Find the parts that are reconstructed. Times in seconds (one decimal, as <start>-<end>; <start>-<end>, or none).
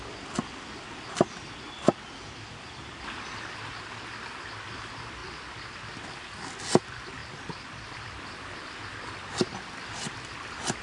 none